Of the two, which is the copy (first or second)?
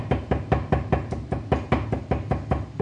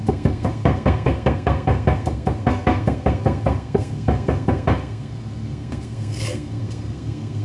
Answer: second